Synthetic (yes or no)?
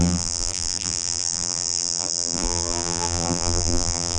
yes